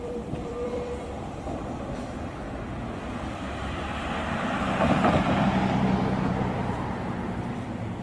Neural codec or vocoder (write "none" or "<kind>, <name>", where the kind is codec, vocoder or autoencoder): vocoder, BigVGAN v2